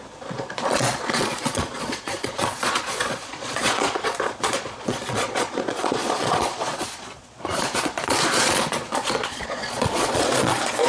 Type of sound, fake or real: fake